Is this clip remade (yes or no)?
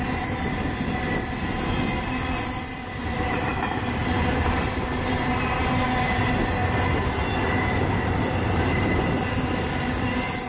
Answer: no